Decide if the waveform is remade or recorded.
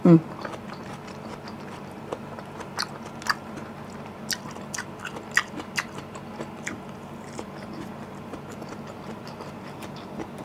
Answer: recorded